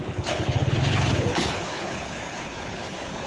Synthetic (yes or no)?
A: yes